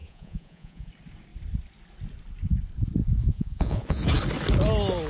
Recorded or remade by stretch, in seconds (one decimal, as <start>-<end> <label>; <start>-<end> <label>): 0.0-0.9 remade; 0.9-3.0 recorded; 3.0-4.0 remade; 4.0-5.1 recorded